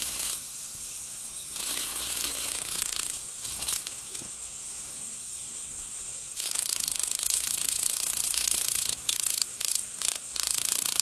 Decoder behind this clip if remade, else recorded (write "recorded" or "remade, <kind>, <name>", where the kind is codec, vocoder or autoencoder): remade, codec, SNAC